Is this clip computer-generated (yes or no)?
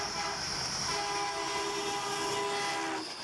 no